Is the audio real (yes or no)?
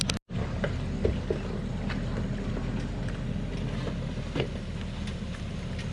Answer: yes